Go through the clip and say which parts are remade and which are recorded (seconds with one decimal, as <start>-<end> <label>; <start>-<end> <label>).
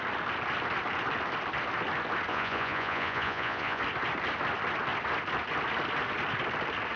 0.0-2.3 recorded; 2.3-3.8 remade; 3.8-7.0 recorded